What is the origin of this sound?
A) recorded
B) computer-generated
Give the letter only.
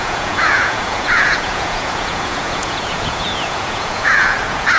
B